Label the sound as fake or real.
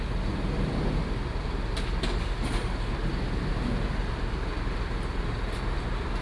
real